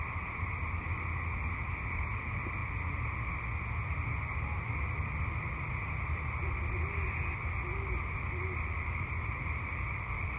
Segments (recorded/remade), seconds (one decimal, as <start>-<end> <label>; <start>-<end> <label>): 0.0-10.4 recorded